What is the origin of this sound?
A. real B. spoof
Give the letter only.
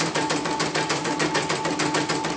A